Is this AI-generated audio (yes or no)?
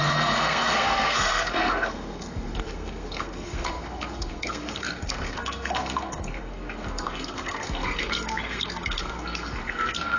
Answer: yes